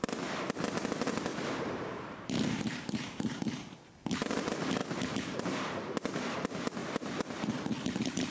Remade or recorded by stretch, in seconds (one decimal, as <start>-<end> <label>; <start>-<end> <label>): 0.0-1.3 recorded; 1.3-3.4 remade; 3.4-4.8 recorded; 4.8-5.4 remade; 5.4-8.3 recorded